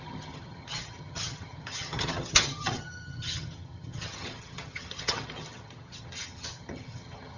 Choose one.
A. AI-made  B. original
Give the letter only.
A